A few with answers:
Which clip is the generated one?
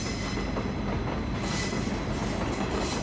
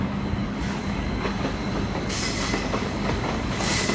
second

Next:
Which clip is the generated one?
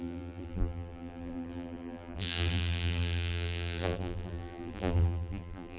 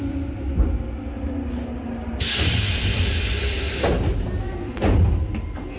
first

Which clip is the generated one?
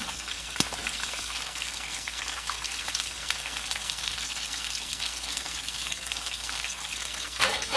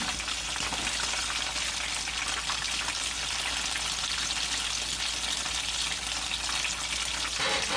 first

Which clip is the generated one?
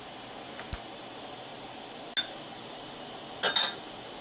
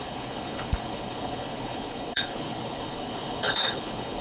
second